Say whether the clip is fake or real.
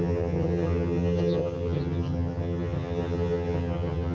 fake